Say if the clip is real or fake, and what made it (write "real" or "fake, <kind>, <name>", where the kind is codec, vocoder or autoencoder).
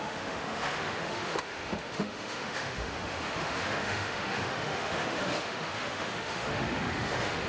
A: fake, autoencoder, DAC-VAE